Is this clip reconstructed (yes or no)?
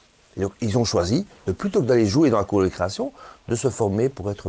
yes